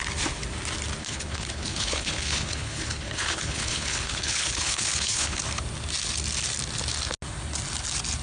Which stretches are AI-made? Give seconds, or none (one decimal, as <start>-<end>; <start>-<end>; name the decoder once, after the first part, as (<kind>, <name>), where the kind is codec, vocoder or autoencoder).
1.0-5.4 (codec, HILCodec)